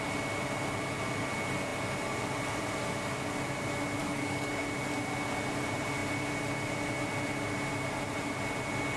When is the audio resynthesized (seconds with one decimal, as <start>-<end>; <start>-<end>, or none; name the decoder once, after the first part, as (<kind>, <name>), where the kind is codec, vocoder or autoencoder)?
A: 4.0-4.6 (codec, DAC)